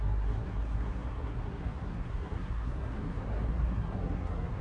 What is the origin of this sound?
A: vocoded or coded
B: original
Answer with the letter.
A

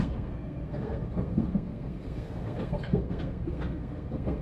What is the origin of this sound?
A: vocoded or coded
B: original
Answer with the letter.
A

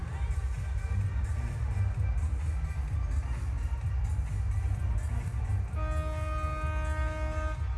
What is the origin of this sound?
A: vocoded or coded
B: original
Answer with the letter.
B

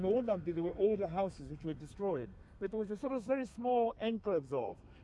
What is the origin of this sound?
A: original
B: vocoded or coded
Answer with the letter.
B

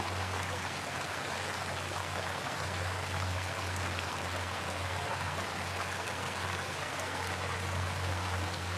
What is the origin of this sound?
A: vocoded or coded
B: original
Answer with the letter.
A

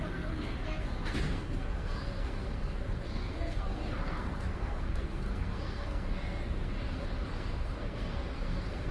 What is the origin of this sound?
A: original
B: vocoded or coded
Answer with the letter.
B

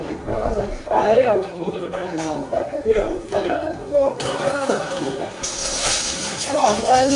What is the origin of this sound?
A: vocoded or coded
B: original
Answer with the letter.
A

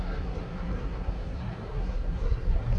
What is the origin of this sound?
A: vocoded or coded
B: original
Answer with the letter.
A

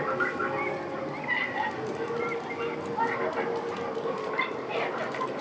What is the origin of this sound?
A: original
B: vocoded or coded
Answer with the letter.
A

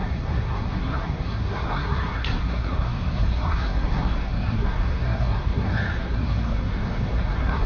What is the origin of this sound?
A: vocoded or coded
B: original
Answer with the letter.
A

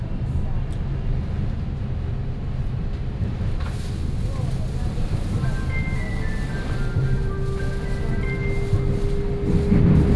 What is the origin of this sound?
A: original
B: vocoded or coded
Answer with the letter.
A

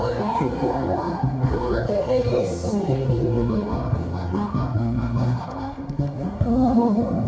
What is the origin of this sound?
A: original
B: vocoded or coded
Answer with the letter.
B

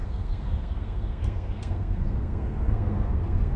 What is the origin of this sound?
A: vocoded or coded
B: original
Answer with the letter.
A